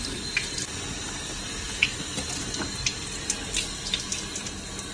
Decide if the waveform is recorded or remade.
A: recorded